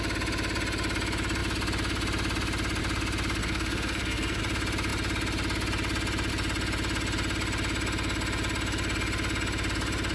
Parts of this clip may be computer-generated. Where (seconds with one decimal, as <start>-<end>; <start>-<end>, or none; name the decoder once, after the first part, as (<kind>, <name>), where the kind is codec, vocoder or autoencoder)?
3.4-4.4 (codec, SNAC)